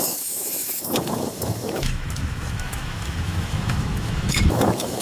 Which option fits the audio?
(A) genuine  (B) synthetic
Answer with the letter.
B